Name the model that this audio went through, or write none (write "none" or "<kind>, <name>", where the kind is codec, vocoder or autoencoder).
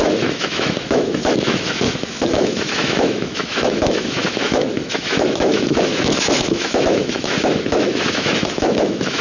autoencoder, DAC-VAE